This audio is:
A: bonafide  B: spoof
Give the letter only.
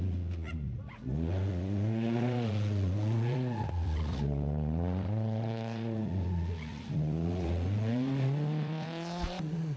B